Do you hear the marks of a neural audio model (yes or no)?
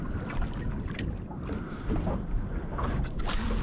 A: no